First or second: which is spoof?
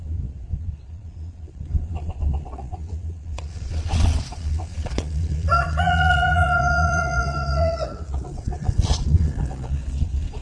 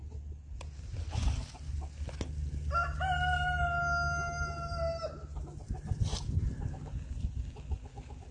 first